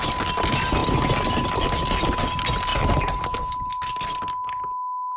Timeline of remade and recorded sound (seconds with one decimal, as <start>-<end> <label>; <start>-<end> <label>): 0.0-5.2 recorded